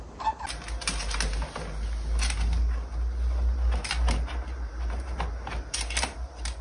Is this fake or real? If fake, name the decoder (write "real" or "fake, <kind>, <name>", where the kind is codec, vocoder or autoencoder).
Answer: real